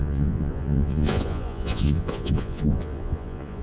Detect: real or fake fake